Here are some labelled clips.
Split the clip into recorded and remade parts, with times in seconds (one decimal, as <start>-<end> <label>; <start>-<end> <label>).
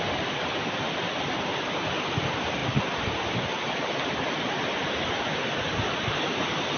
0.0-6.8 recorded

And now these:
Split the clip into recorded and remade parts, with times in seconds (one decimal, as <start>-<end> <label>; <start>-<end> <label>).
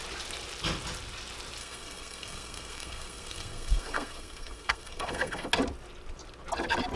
0.0-1.6 recorded; 1.6-5.5 remade; 5.5-7.0 recorded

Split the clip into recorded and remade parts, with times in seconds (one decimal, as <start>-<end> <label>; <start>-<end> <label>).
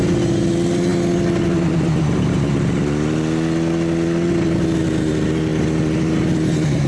0.0-6.9 recorded